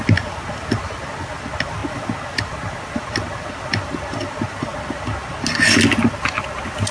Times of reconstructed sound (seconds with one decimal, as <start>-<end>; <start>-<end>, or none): none